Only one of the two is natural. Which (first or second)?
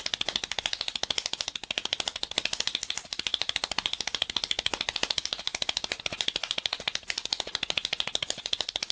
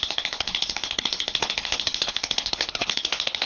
first